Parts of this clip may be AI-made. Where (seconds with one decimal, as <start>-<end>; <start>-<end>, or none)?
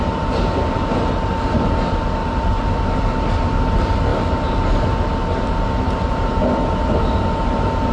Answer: 2.2-3.3